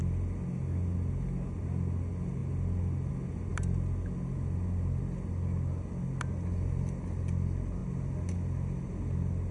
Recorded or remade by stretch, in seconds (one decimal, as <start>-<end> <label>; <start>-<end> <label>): 0.0-9.5 recorded